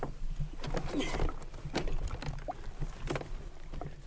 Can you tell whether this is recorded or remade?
recorded